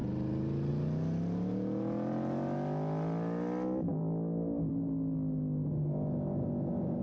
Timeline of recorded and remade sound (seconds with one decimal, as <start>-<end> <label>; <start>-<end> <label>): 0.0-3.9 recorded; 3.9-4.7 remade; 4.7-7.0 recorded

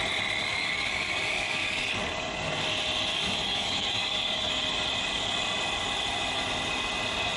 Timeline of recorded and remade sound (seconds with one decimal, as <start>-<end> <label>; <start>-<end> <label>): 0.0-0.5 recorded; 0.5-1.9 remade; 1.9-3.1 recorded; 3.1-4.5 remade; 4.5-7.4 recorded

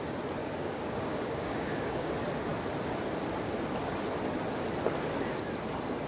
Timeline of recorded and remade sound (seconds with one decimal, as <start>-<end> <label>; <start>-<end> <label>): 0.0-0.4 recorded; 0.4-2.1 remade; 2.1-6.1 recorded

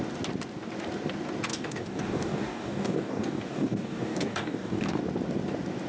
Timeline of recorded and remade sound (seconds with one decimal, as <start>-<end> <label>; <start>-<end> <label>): 0.0-1.5 recorded; 1.5-5.0 remade; 5.0-5.9 recorded

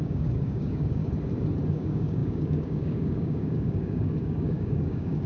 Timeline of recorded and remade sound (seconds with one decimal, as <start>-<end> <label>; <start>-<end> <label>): 0.0-1.0 remade; 1.0-1.7 recorded; 1.7-5.3 remade

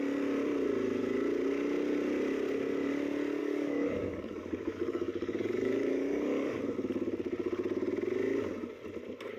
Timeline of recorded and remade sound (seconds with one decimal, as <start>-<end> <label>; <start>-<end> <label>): 0.0-3.4 recorded; 3.4-6.6 remade; 6.6-9.4 recorded